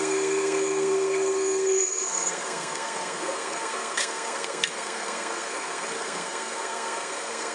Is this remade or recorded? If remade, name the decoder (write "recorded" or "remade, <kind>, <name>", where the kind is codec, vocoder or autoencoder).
remade, codec, SNAC